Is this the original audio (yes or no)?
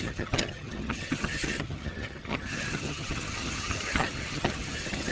no